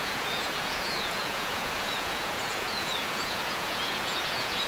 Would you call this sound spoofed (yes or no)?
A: yes